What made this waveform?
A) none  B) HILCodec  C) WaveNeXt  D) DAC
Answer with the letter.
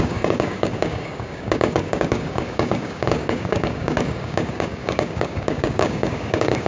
D